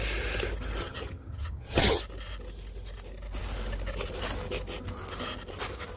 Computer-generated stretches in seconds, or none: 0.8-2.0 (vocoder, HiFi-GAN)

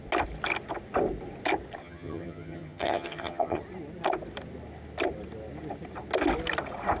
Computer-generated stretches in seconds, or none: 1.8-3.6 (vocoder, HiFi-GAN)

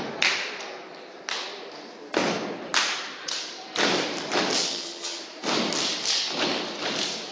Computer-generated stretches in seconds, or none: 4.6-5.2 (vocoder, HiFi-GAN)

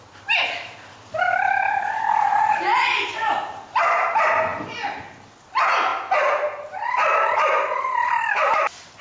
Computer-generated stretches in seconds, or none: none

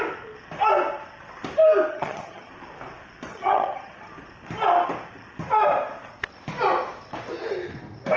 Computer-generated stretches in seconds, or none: 1.9-2.5 (vocoder, HiFi-GAN); 3.3-4.1

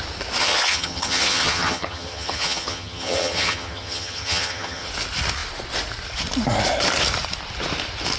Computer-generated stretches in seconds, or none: 0.4-4.9 (vocoder, HiFi-GAN)

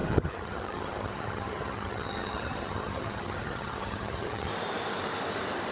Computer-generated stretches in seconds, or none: 0.0-4.5 (vocoder, HiFi-GAN)

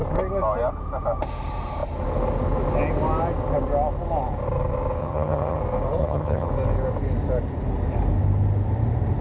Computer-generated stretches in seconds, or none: 5.0-5.6 (vocoder, HiFi-GAN); 6.0-6.5